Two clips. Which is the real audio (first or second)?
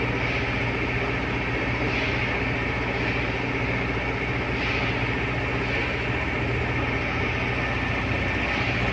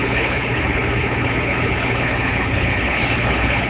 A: first